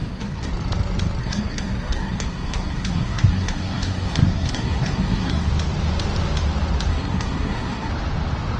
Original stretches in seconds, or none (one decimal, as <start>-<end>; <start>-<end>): 0.5-1.2; 5.5-6.9; 7.9-8.6